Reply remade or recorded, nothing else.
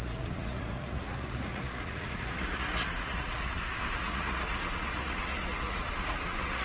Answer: remade